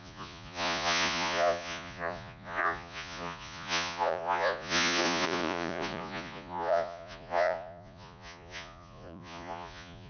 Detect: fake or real fake